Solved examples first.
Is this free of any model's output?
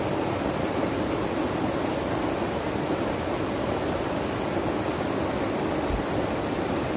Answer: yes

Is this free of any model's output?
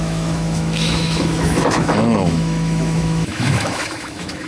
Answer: no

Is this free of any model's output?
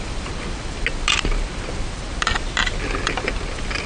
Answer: yes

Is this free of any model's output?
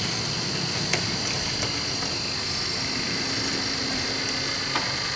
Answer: yes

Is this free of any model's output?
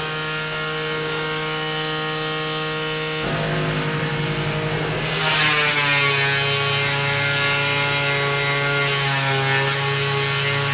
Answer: yes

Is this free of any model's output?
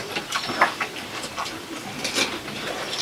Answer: no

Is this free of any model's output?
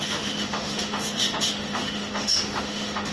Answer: no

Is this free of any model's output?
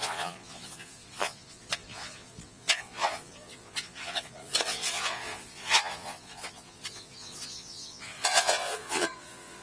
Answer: no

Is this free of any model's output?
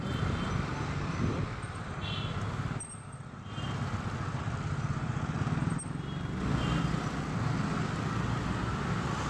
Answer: yes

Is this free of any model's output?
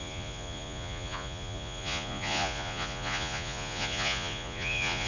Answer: no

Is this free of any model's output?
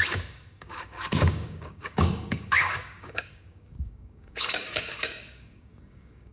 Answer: no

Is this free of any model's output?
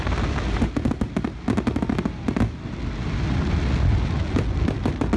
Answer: yes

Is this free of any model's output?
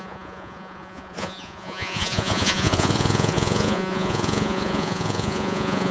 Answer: no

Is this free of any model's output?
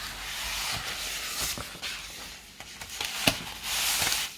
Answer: yes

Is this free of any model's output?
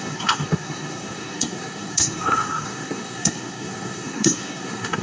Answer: no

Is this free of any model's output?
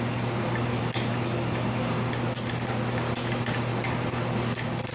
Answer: yes